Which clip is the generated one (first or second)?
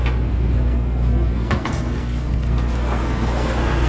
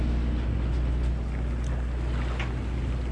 first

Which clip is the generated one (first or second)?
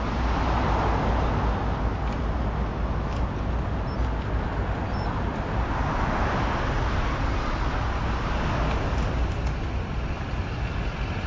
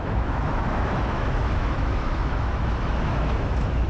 second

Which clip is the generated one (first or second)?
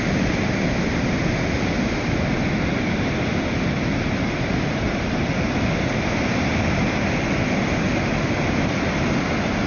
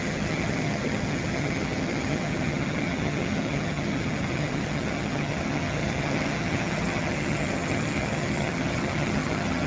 second